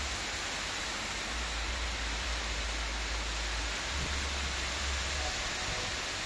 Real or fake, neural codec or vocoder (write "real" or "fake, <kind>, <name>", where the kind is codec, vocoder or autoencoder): real